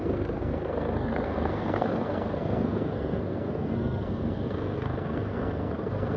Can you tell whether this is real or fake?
fake